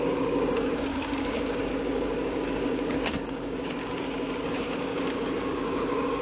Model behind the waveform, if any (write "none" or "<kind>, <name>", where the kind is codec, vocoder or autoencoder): codec, DAC